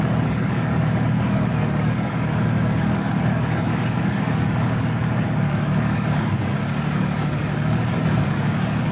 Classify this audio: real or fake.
fake